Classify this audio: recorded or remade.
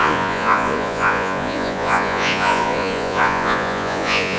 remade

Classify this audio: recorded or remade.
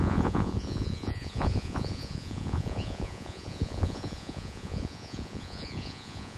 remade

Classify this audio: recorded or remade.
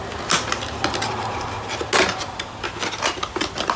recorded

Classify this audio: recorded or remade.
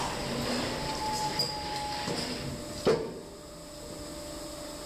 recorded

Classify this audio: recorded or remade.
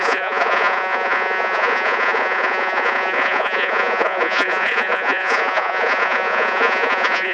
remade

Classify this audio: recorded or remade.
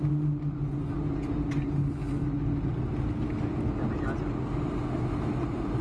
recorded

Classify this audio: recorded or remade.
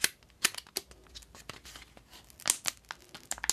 recorded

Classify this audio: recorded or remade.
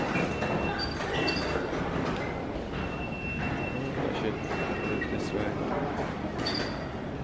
recorded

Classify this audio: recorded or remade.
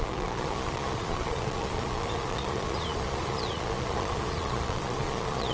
remade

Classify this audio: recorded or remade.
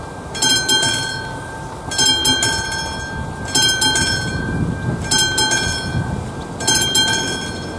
recorded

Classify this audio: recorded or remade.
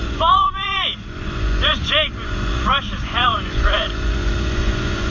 remade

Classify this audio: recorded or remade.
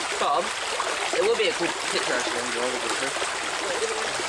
recorded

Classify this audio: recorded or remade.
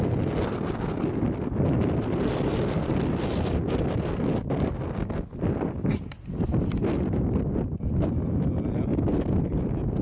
recorded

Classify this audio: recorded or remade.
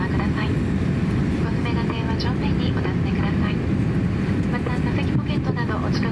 recorded